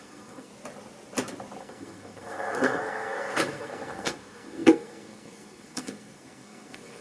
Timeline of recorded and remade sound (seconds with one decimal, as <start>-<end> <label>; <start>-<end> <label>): 0.0-0.5 remade; 0.5-1.6 recorded; 1.6-7.0 remade